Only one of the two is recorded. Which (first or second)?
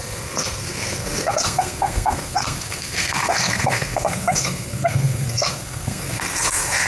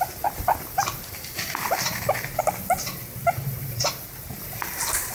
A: second